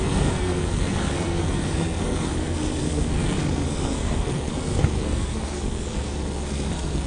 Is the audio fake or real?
fake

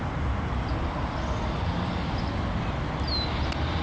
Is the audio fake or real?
real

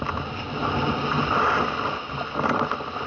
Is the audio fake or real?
real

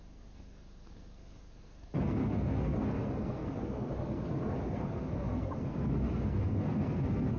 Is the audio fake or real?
fake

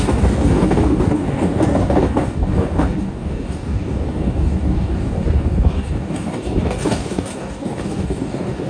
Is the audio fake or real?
fake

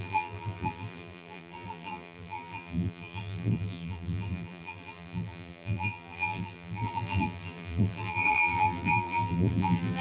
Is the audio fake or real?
fake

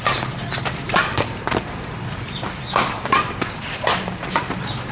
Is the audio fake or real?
fake